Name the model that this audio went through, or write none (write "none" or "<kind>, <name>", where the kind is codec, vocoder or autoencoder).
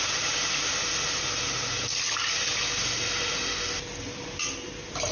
none